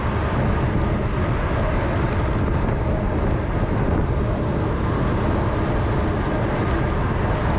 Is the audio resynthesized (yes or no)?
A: no